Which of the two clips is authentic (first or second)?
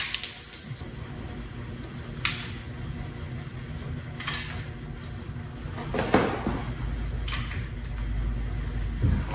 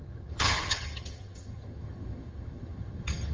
first